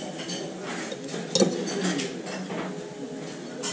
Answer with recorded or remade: recorded